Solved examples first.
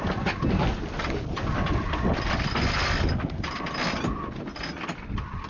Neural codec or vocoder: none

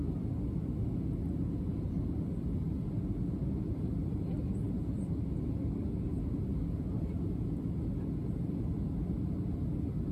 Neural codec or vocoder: none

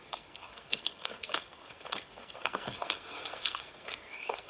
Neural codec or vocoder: codec, SNAC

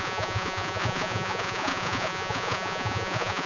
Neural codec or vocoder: vocoder, Vocos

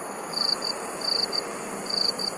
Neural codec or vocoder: vocoder, BigVGAN v2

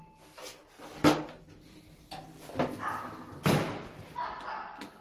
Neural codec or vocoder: none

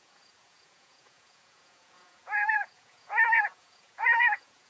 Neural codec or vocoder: vocoder, Vocos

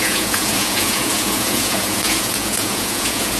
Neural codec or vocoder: vocoder, Vocos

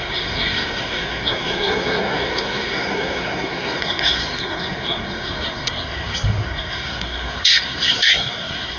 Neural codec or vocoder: codec, SNAC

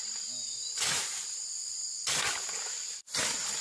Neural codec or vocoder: none